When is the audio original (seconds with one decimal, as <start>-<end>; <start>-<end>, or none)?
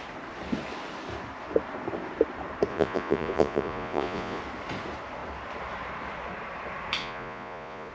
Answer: 0.0-2.7; 4.4-7.0